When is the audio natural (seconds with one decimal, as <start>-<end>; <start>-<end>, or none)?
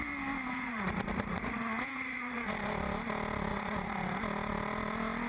0.0-0.5; 2.5-3.5; 4.2-5.3